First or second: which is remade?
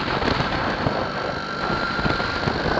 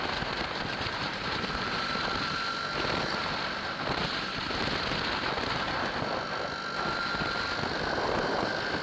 first